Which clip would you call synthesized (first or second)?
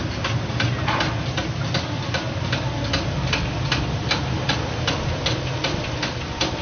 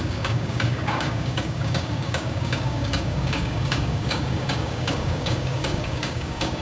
second